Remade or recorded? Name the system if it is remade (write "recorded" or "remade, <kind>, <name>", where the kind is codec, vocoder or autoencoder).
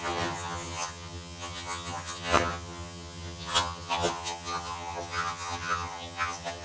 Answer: remade, vocoder, HiFi-GAN